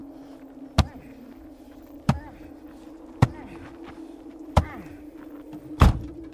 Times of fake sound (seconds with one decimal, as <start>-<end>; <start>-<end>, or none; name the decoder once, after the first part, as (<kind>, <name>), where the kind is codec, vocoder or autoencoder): 3.8-6.3 (vocoder, BigVGAN v2)